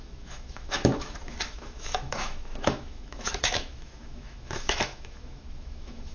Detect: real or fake fake